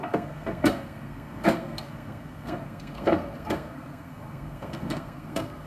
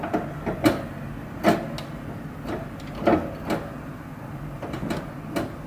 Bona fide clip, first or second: second